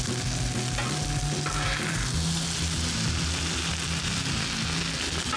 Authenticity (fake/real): real